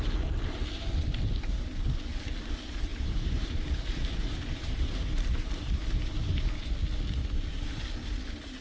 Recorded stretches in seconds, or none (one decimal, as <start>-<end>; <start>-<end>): 0.0-2.9; 6.7-7.2; 7.8-8.6